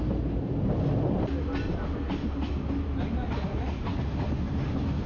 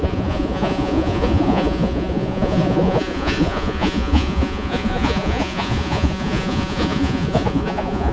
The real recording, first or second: first